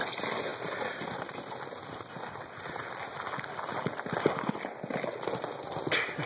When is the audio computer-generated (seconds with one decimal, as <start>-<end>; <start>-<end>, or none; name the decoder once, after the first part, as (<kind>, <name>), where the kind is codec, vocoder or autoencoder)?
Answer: none